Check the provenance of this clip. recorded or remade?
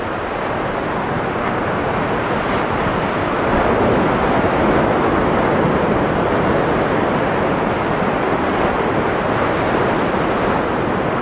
recorded